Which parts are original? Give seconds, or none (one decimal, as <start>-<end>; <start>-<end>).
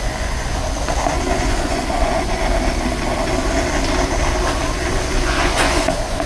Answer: 0.6-1.1; 2.4-4.8